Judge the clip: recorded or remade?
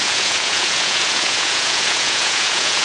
remade